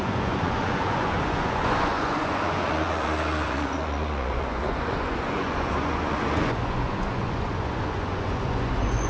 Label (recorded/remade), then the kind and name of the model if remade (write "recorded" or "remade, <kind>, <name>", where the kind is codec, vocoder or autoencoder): remade, vocoder, Vocos